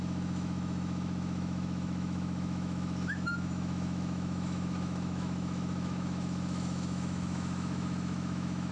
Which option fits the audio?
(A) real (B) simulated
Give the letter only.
B